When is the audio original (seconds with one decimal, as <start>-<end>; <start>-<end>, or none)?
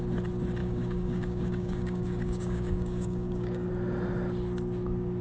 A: 0.0-0.6; 3.7-5.2